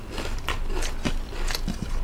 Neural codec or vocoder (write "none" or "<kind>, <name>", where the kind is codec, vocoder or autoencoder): none